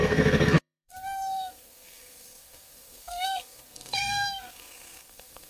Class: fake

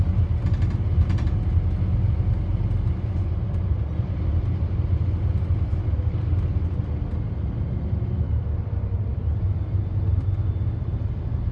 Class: real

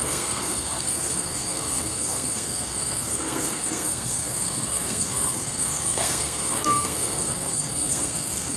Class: fake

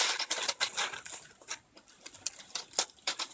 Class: real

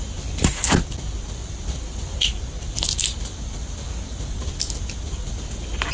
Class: fake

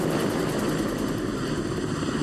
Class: real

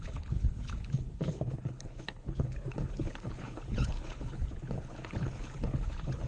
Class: fake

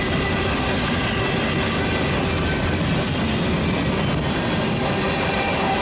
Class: real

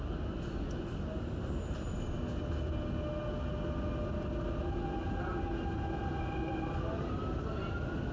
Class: real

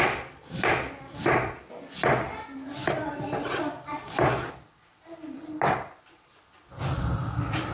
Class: real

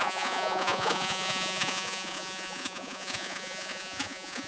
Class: fake